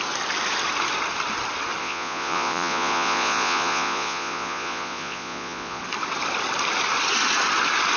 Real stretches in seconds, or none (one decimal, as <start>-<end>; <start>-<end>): 0.0-1.8; 5.8-8.0